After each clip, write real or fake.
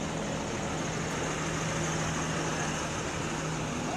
real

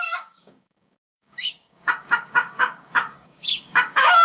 fake